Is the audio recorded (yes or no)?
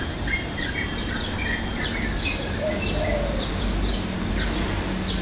yes